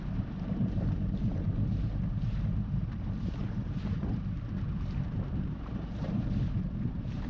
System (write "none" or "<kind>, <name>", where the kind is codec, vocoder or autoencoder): vocoder, BigVGAN v2